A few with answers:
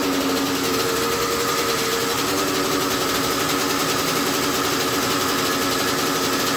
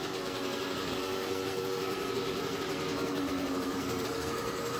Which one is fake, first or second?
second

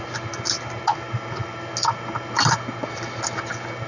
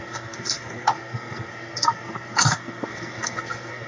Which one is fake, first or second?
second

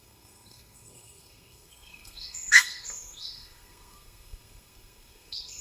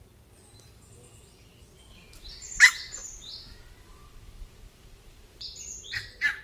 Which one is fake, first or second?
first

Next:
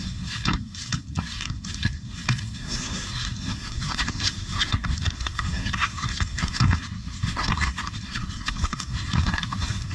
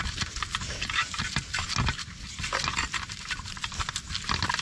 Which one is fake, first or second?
first